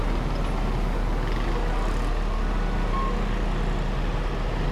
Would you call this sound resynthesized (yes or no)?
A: no